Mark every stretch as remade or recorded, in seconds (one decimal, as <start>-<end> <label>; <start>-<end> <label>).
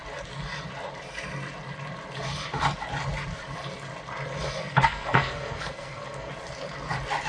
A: 0.0-4.6 recorded; 4.6-6.3 remade; 6.3-7.3 recorded